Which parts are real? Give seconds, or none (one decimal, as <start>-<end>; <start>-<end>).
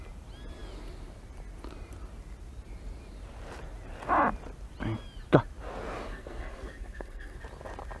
0.0-6.1; 7.4-8.0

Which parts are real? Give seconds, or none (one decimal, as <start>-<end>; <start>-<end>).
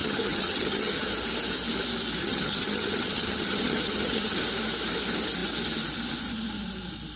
1.1-2.2; 4.4-7.2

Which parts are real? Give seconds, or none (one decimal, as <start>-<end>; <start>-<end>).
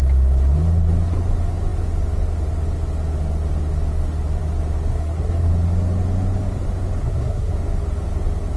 0.0-4.9; 5.5-7.0; 7.5-8.6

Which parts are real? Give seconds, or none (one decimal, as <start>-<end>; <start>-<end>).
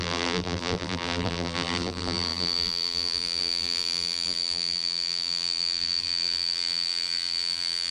none